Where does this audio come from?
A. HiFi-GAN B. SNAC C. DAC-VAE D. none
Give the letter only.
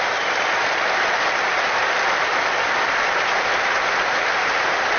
D